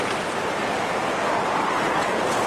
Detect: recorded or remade recorded